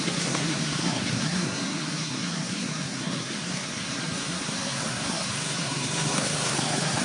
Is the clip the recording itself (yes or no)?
no